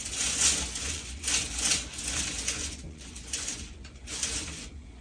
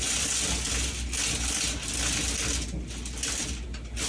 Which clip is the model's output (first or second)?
first